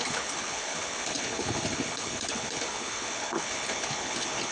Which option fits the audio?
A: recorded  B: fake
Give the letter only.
B